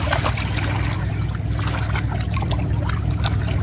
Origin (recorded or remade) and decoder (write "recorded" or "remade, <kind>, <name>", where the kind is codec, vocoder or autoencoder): recorded